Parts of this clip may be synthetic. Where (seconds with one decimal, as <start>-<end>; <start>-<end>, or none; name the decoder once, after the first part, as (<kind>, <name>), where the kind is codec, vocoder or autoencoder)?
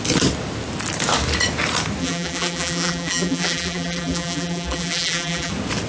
2.0-5.5 (vocoder, BigVGAN v2)